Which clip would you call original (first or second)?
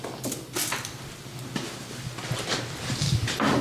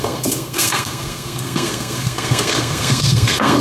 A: first